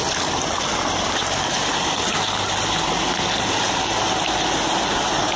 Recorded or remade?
recorded